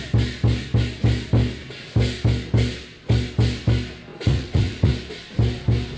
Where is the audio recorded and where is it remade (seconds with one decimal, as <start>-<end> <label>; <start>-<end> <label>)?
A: 0.0-4.1 recorded; 4.1-4.9 remade; 4.9-6.0 recorded